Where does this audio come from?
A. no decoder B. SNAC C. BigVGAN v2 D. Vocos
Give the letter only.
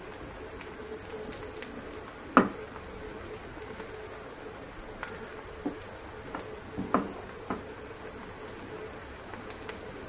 A